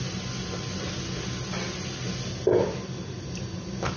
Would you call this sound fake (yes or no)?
no